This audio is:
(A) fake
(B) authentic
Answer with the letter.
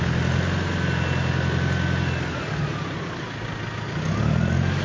B